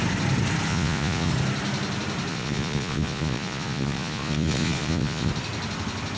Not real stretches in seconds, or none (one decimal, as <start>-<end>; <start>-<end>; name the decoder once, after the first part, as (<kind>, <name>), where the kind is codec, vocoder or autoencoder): 0.7-1.3 (vocoder, Vocos); 2.3-5.3

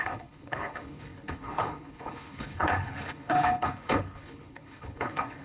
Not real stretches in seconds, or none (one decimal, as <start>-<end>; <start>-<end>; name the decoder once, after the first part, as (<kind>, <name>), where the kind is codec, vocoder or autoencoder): 0.0-5.4 (codec, HILCodec)

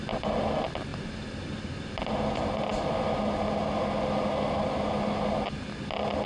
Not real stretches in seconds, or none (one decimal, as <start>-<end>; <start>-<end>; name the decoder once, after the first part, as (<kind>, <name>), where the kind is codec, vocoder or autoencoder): none

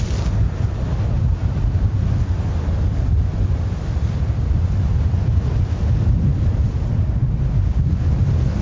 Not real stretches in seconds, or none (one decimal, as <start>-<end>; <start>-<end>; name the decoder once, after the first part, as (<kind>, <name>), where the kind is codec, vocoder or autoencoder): none

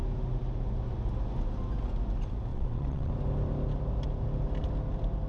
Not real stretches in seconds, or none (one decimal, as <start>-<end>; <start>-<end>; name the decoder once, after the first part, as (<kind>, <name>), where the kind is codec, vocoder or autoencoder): 2.5-3.1 (vocoder, WaveNeXt)

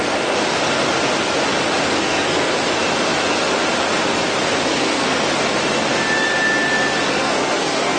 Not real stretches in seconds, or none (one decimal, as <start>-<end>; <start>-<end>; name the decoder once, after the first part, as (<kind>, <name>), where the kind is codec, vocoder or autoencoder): 2.0-2.5 (codec, SNAC); 4.7-5.2; 7.1-8.0

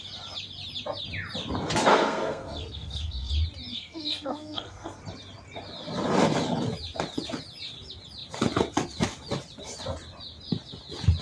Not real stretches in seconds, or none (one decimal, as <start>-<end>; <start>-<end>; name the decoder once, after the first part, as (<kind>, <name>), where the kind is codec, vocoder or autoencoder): 1.9-3.3 (codec, SNAC); 3.7-5.0